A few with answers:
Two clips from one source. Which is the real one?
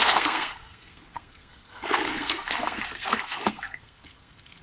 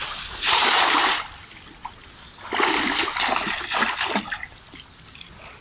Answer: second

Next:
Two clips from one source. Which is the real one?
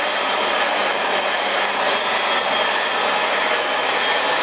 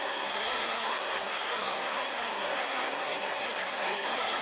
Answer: first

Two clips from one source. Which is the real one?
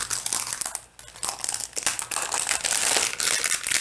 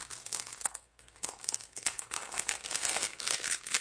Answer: first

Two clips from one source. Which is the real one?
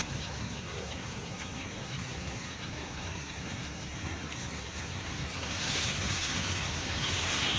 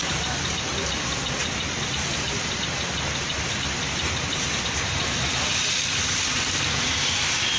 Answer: second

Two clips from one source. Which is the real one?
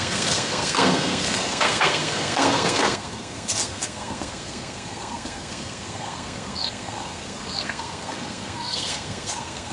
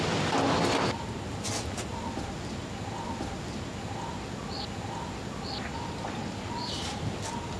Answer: second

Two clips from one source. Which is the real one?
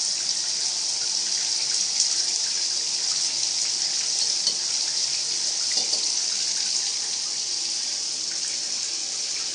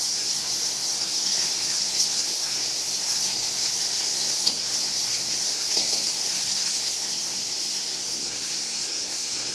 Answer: first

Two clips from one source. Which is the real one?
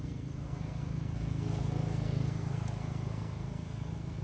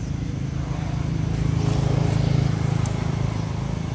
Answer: second